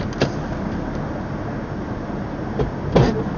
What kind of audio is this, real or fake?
real